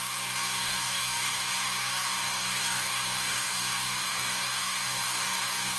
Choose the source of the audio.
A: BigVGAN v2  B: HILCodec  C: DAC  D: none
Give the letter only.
C